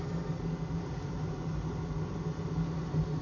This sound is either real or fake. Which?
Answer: real